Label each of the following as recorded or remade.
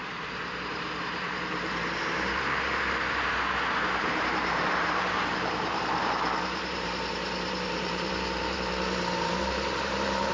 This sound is remade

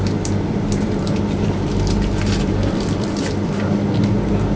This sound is remade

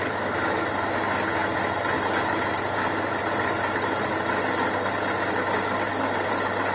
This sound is remade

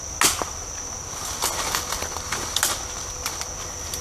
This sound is recorded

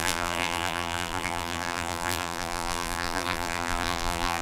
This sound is remade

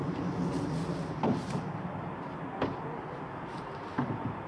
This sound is recorded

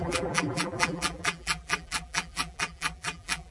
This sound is remade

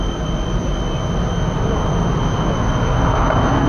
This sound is recorded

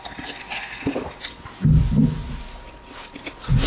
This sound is recorded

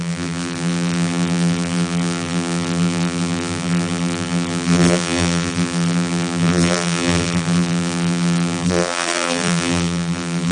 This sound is remade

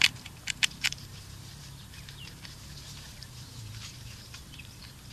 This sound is remade